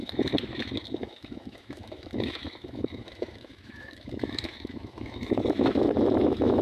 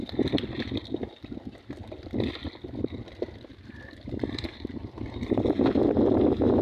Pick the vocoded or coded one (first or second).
first